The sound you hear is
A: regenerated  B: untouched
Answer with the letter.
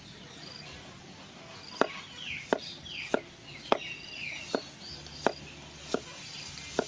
B